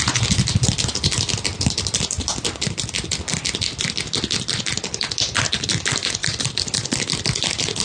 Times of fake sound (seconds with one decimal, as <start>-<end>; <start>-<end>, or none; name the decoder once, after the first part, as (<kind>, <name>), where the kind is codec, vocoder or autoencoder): none